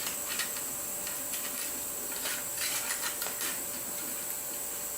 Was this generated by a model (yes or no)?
no